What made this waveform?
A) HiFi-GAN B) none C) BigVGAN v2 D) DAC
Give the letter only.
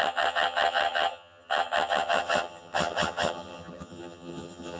A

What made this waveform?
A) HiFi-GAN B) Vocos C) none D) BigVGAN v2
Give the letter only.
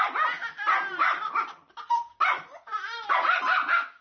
C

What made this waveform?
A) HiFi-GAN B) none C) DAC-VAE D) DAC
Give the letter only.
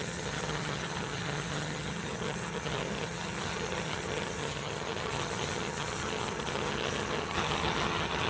A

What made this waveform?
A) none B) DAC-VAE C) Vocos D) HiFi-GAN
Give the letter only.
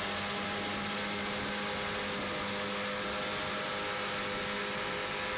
A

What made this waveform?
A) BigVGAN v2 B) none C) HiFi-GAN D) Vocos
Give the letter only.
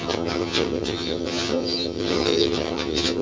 C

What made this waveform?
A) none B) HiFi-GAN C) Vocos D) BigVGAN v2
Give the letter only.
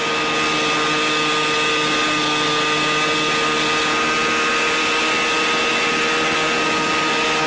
A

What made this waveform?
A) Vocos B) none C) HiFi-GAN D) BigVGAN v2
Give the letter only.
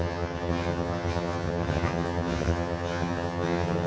C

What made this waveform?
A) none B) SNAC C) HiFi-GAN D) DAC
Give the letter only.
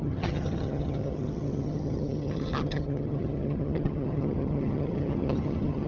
C